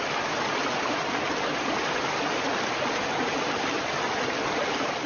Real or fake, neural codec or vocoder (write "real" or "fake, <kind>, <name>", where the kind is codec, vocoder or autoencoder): real